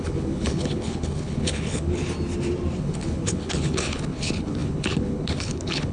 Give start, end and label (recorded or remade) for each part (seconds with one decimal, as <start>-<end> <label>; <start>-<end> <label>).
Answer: 0.0-2.0 remade; 2.0-2.8 recorded; 2.8-5.9 remade